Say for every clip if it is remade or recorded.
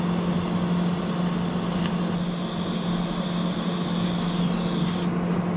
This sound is recorded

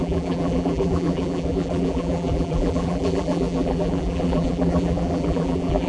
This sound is remade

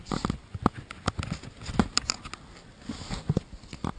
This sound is recorded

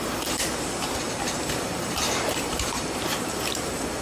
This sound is remade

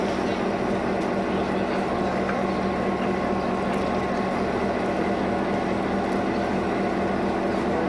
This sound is recorded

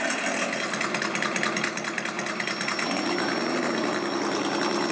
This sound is recorded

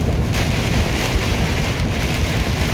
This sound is remade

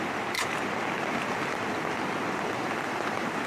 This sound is remade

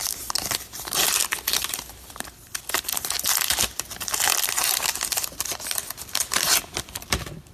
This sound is recorded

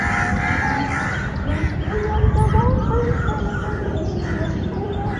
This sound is remade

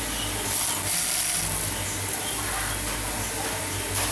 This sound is recorded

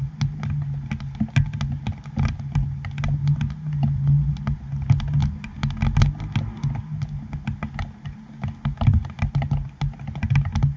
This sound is recorded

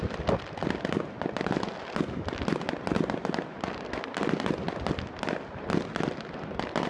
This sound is recorded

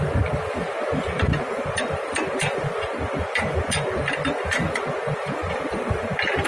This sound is remade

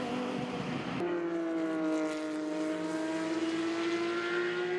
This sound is recorded